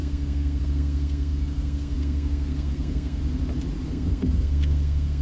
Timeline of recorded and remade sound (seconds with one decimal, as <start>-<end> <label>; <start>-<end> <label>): 0.0-3.2 remade; 3.2-3.9 recorded; 3.9-5.2 remade